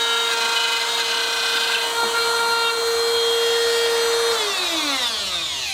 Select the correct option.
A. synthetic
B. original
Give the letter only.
B